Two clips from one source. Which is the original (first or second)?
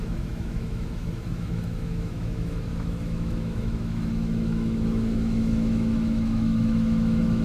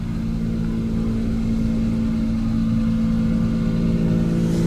second